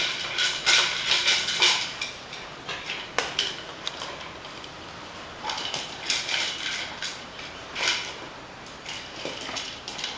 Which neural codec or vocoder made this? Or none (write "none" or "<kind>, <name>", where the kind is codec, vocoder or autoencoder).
none